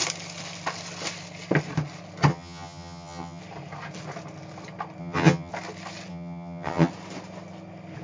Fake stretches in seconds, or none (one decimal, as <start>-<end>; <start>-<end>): 2.3-3.4; 5.0-5.5; 6.1-6.9